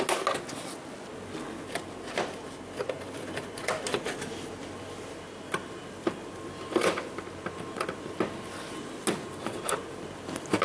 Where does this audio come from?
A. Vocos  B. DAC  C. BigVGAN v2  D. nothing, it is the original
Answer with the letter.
D